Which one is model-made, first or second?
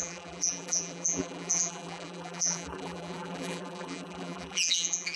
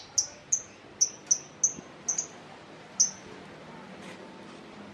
first